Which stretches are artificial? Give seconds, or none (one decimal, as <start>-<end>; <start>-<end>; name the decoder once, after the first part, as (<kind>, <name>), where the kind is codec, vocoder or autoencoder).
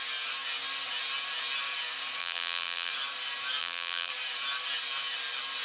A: 2.2-2.9 (vocoder, BigVGAN v2); 3.6-4.1